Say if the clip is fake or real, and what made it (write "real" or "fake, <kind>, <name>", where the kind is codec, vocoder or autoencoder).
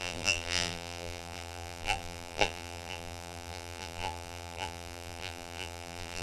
fake, vocoder, BigVGAN v2